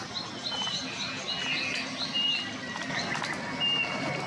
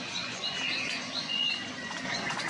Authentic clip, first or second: first